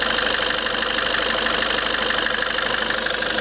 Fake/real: real